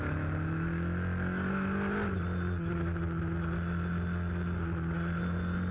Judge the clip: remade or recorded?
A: recorded